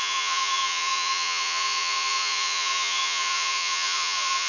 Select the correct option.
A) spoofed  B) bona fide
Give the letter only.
A